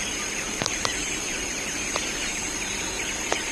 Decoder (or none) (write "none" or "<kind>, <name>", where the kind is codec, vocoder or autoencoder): vocoder, BigVGAN v2